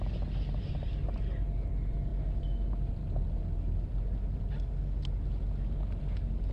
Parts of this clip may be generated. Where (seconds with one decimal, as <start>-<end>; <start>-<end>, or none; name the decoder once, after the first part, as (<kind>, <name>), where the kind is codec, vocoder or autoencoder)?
none